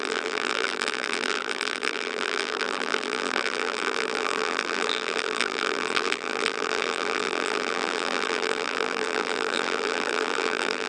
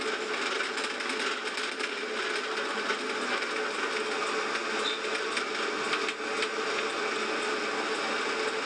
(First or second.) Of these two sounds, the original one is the second